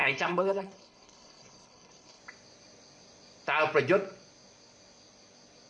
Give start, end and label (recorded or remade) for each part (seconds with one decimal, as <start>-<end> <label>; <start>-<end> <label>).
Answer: 0.0-2.2 remade; 2.2-5.7 recorded